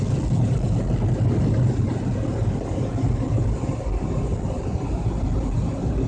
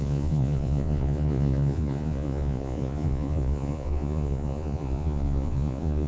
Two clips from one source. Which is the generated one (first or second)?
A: second